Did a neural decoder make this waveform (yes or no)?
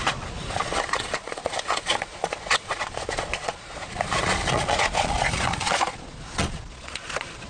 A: yes